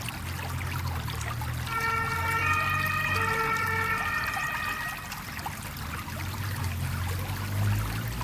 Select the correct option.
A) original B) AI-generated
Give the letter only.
A